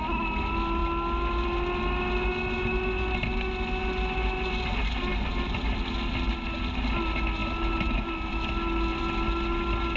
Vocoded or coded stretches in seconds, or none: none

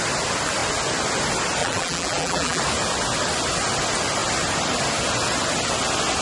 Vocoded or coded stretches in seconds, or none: 1.6-2.6 (vocoder, BigVGAN v2)

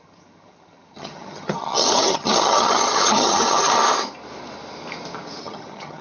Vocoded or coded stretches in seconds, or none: 0.0-3.8 (vocoder, HiFi-GAN); 5.4-6.0

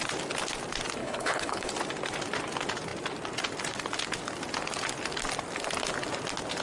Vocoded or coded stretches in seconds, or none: 1.0-1.7 (codec, HILCodec)

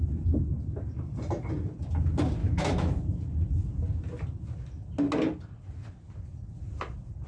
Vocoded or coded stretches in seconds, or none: 2.4-3.0 (autoencoder, DAC-VAE)

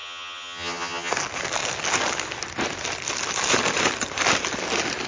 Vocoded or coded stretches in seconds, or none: 0.0-1.1 (vocoder, HiFi-GAN)

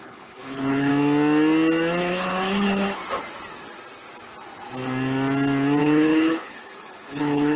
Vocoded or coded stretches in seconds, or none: 0.0-0.9 (codec, HILCodec); 2.0-3.0; 5.8-7.6